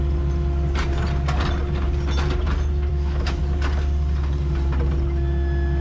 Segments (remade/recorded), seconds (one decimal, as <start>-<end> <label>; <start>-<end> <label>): 0.0-2.9 recorded; 2.9-3.4 remade; 3.4-5.8 recorded